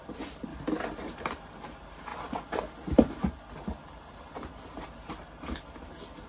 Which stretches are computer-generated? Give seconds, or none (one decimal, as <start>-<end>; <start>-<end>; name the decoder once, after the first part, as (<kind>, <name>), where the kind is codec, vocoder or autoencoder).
0.0-0.5 (vocoder, BigVGAN v2); 1.0-2.1; 4.5-6.3